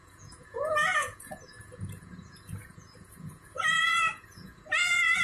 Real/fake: fake